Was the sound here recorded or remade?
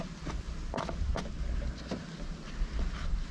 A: recorded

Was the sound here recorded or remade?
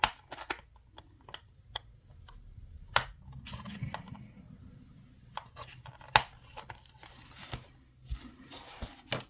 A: recorded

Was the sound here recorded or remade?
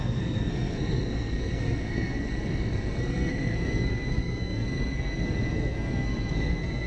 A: remade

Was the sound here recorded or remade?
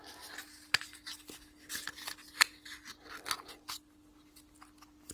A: recorded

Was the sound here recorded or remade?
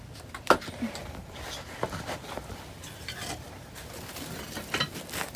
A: recorded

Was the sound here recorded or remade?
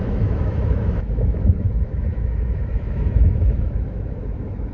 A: remade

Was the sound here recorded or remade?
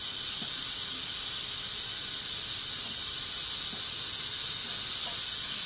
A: recorded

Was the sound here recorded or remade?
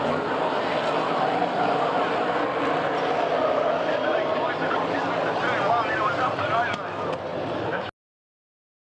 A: recorded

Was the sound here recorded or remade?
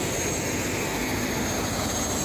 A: recorded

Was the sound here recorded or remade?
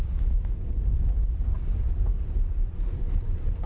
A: remade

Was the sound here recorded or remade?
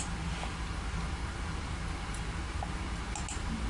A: recorded